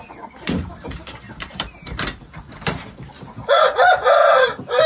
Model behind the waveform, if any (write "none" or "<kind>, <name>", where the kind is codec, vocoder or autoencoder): vocoder, BigVGAN v2